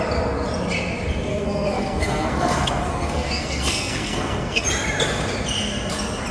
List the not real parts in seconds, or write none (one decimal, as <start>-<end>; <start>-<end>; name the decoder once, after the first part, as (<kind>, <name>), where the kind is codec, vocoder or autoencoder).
1.3-4.6 (codec, SNAC)